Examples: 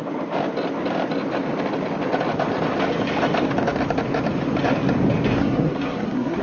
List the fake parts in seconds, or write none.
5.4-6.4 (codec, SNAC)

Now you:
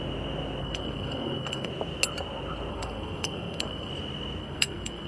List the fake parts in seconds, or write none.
0.6-1.7 (codec, SNAC); 2.7-3.9; 4.4-5.1